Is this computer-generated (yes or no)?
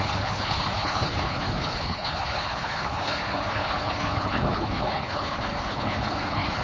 yes